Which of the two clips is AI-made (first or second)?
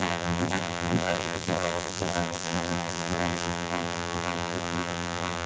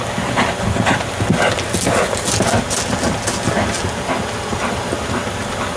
first